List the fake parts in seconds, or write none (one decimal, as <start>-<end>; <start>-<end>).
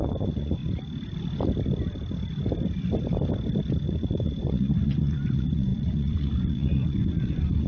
0.0-0.6; 3.8-7.7